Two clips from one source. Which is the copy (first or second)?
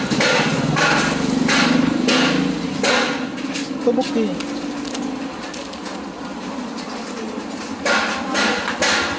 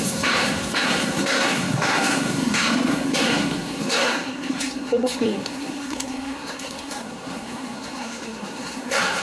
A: second